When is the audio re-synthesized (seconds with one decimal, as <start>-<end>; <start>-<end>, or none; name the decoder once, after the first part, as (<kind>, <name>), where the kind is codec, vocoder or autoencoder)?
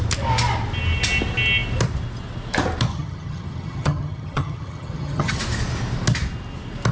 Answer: 2.9-5.4 (vocoder, HiFi-GAN)